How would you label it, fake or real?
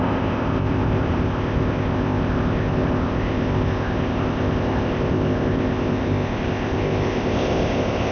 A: fake